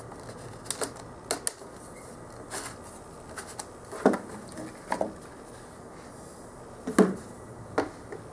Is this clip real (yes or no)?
yes